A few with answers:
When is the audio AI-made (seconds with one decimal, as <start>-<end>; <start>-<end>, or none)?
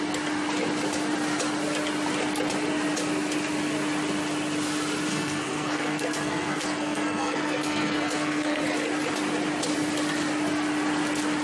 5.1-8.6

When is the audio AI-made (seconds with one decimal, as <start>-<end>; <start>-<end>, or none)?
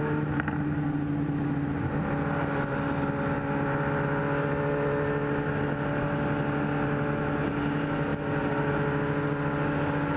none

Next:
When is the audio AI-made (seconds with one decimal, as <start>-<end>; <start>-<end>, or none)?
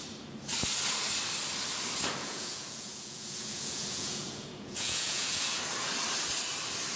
2.2-5.6